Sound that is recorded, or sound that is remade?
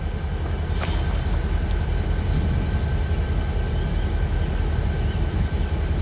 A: recorded